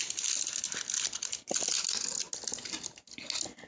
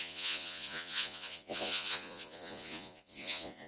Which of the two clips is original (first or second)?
first